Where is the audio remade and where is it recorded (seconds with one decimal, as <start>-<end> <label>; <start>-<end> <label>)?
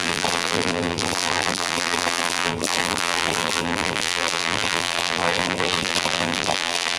0.0-7.0 remade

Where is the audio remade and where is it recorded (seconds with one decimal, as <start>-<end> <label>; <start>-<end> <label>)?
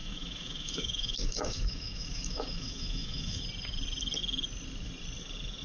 0.0-3.4 remade; 3.4-5.6 recorded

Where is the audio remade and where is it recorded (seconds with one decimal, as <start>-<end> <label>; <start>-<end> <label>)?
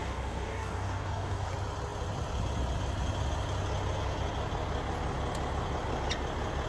0.0-1.5 remade; 1.5-6.7 recorded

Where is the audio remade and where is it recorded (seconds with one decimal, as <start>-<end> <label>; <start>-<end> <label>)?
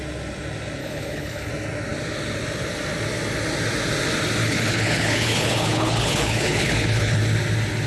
0.0-0.8 recorded; 0.8-1.5 remade; 1.5-4.4 recorded; 4.4-7.2 remade; 7.2-7.9 recorded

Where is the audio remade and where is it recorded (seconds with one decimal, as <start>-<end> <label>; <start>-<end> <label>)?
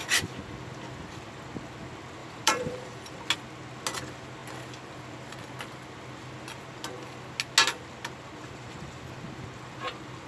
0.0-2.2 recorded; 2.2-3.2 remade; 3.2-8.4 recorded; 8.4-9.0 remade; 9.0-10.3 recorded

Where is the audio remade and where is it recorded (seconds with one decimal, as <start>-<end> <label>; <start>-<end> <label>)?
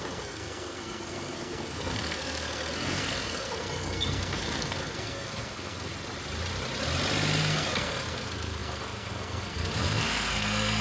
0.0-5.9 remade; 5.9-7.4 recorded; 7.4-10.8 remade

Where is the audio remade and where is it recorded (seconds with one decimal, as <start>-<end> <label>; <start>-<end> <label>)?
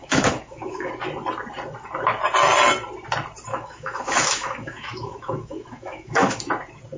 0.0-0.9 remade; 0.9-3.5 recorded; 3.5-6.5 remade; 6.5-7.0 recorded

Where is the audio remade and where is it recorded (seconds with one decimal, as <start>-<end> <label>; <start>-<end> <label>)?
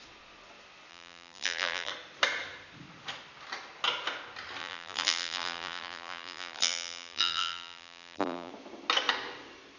0.0-0.9 recorded; 0.9-1.9 remade; 1.9-4.6 recorded; 4.6-8.5 remade; 8.5-9.8 recorded